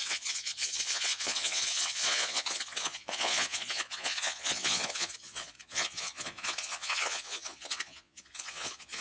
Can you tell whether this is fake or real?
fake